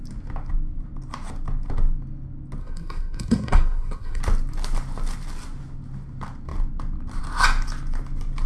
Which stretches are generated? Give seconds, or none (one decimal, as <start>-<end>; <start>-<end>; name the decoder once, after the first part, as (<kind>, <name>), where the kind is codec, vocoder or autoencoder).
2.6-4.2 (codec, SNAC)